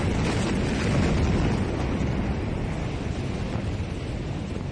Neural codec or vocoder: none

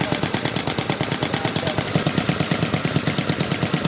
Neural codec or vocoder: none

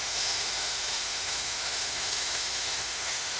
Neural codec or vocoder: autoencoder, DAC-VAE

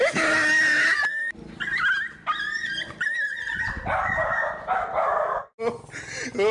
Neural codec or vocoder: none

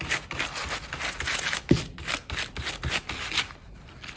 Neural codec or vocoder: none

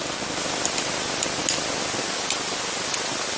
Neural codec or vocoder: none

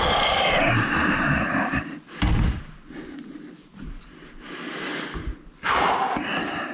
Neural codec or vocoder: none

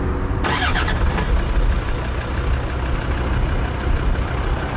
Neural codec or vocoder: none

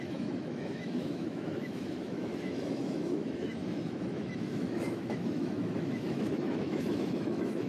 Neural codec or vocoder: autoencoder, DAC-VAE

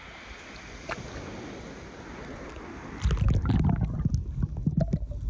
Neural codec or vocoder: none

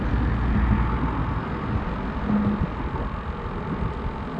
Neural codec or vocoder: none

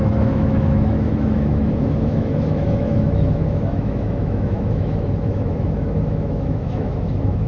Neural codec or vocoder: autoencoder, DAC-VAE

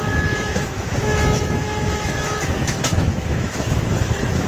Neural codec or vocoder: autoencoder, DAC-VAE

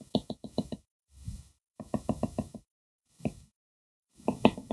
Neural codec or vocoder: autoencoder, DAC-VAE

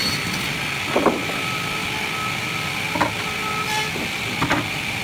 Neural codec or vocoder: none